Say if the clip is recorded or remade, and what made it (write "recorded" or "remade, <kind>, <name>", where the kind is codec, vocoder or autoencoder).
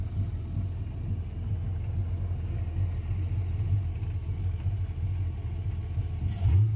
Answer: recorded